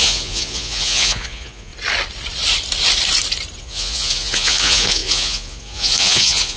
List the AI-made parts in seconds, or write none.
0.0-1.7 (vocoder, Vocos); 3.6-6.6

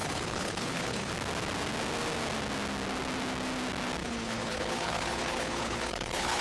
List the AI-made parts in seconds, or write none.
0.0-1.1 (codec, HILCodec); 4.0-6.4

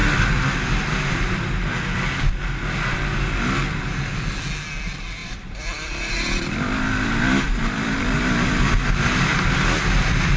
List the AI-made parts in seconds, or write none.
5.2-8.7 (vocoder, BigVGAN v2); 9.3-10.4

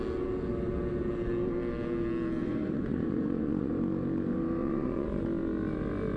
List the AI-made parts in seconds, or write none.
2.4-3.7 (vocoder, Vocos); 4.6-5.2

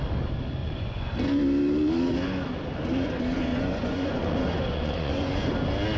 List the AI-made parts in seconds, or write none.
0.6-1.1 (vocoder, Vocos); 3.5-5.5

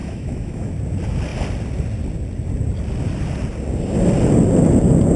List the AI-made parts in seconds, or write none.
0.0-0.7 (autoencoder, DAC-VAE)

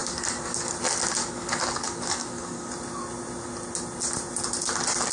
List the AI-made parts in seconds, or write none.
0.0-0.7 (codec, DAC); 1.2-2.7

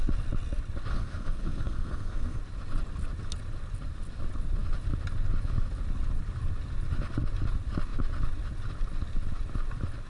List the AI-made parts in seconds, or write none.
0.9-2.4 (codec, SNAC)